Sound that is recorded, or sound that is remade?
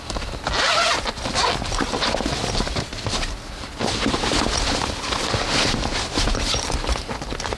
recorded